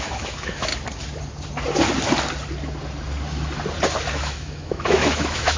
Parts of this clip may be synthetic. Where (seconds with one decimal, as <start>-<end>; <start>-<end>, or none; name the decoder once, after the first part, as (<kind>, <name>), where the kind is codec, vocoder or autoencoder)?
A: 0.0-0.7 (autoencoder, DAC-VAE); 4.1-5.6